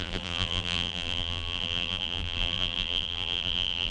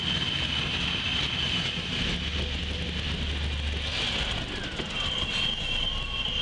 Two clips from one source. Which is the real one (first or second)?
second